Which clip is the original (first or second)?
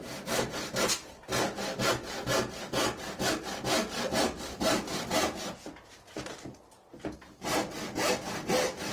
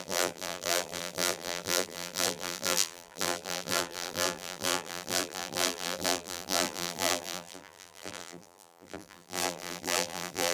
first